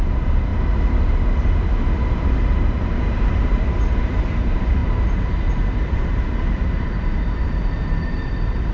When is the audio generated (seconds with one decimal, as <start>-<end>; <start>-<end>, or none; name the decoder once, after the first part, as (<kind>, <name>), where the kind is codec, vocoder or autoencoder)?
0.0-0.5 (vocoder, BigVGAN v2); 2.0-8.7

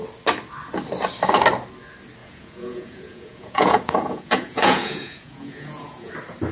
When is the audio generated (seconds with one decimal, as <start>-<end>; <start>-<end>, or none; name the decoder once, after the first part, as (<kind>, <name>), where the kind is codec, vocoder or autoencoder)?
2.2-6.1 (vocoder, Vocos)

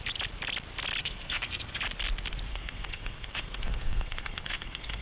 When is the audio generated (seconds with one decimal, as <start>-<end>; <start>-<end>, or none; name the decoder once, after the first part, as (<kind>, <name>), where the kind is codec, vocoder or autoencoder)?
1.0-1.8 (codec, SNAC); 2.5-5.0

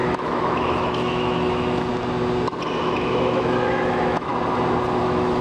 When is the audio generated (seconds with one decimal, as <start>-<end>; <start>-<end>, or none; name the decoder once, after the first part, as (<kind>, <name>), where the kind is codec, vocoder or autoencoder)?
0.0-1.9 (autoencoder, DAC-VAE); 2.8-4.3; 5.0-5.4

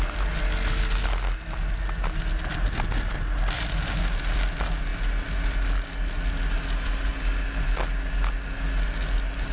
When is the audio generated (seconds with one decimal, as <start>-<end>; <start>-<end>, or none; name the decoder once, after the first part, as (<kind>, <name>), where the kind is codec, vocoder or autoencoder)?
none

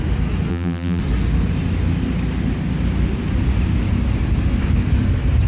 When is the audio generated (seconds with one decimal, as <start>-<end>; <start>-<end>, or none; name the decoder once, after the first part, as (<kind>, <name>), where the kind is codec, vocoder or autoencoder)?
0.5-1.0 (vocoder, BigVGAN v2)